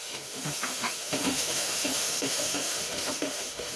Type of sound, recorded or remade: remade